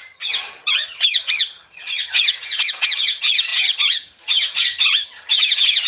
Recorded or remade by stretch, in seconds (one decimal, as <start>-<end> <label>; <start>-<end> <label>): 0.0-5.9 remade